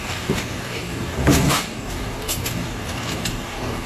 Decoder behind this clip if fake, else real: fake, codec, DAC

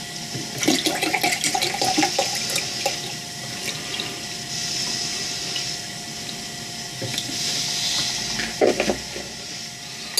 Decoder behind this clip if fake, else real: real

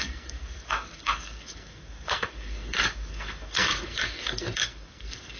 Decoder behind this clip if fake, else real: fake, codec, SNAC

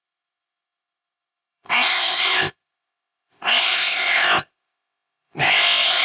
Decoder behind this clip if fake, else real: fake, codec, ZipCodec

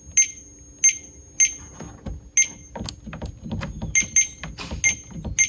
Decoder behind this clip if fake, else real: real